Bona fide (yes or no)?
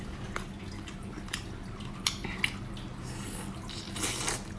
yes